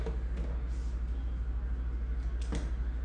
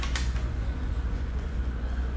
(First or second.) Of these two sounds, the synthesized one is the second